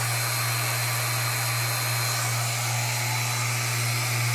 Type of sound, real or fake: real